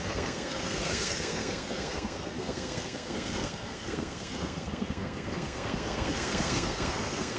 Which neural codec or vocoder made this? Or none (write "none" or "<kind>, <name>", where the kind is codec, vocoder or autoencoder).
codec, SNAC